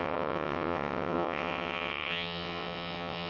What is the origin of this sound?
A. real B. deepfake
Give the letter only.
B